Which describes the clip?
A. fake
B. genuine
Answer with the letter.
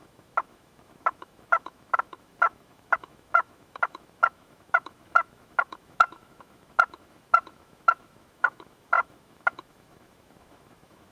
A